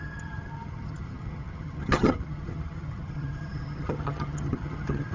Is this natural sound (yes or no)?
no